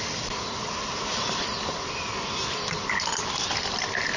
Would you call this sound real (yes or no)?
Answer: yes